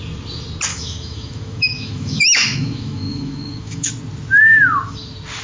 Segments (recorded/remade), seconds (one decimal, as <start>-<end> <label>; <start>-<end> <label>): 0.0-0.7 recorded; 0.7-3.9 remade; 3.9-5.4 recorded